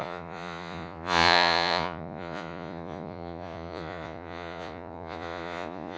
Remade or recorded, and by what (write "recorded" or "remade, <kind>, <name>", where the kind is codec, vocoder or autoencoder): remade, vocoder, Vocos